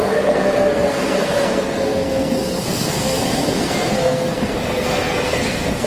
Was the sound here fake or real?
fake